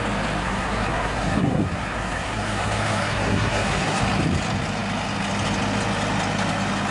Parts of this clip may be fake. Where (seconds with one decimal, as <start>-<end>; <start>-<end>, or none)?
0.4-4.0